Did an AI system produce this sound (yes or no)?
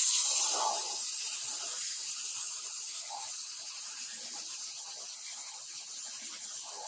no